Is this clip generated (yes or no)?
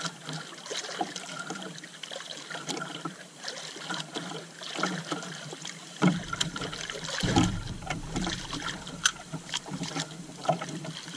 yes